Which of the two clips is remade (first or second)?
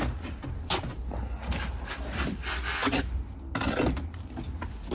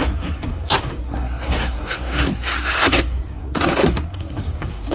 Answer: second